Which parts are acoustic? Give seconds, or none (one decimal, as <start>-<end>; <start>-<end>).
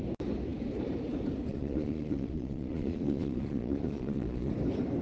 0.0-1.5; 4.5-5.0